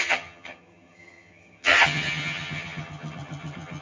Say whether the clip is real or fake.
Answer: fake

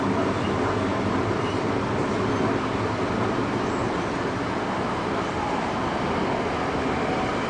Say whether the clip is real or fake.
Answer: real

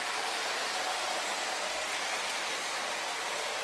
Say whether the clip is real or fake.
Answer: real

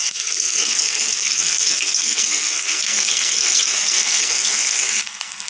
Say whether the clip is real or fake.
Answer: fake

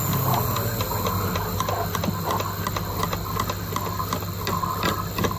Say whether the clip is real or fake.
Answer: real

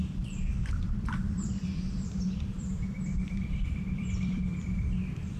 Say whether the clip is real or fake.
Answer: fake